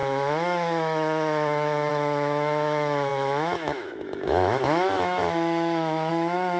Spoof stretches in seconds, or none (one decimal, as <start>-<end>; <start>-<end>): 0.0-6.6